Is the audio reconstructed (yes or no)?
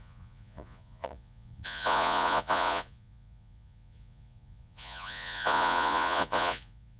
yes